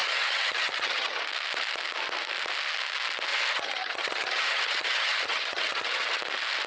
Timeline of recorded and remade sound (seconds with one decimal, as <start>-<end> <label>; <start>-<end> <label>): 0.0-1.2 remade; 1.2-3.3 recorded; 3.3-6.2 remade; 6.2-6.7 recorded